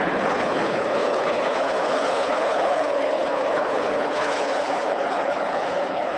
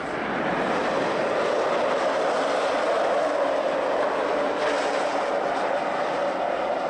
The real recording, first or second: second